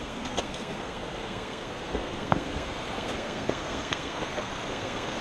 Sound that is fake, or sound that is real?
fake